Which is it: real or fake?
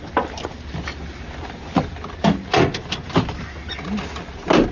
real